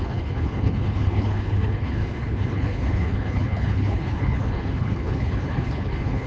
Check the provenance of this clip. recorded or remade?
remade